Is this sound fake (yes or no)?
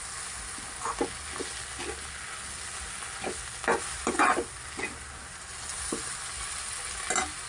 no